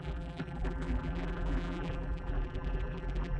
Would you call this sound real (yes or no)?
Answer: no